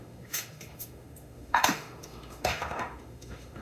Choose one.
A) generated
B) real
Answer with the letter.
A